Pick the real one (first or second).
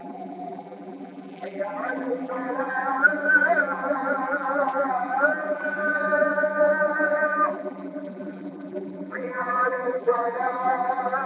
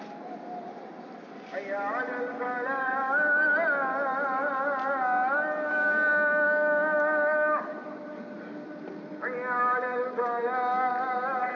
second